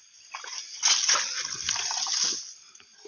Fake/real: real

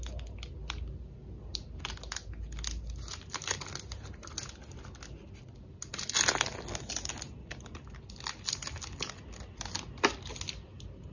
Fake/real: real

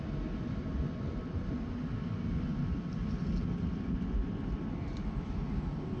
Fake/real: real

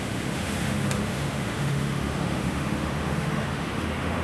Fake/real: fake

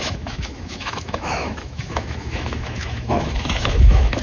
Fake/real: fake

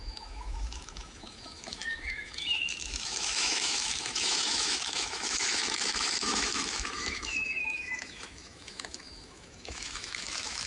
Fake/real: fake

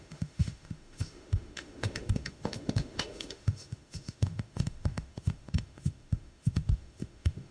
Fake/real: fake